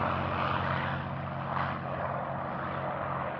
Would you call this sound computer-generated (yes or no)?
no